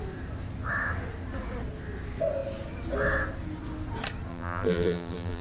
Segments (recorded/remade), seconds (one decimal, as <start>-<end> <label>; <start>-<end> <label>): 0.0-4.3 recorded; 4.3-5.4 remade